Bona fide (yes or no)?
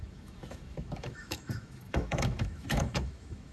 no